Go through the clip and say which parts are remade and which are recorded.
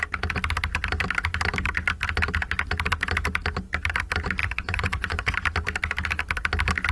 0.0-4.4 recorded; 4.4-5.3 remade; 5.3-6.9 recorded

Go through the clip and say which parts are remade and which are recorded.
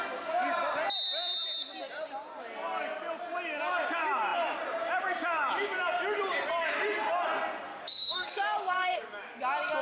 0.0-7.7 recorded; 7.7-9.4 remade; 9.4-9.8 recorded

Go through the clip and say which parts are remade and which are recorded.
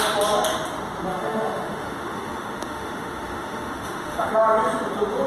0.0-1.1 recorded; 1.1-4.3 remade; 4.3-5.3 recorded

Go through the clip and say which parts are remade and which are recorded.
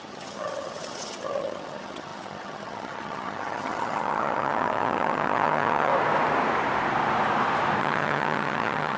0.0-5.9 remade; 5.9-7.8 recorded; 7.8-9.0 remade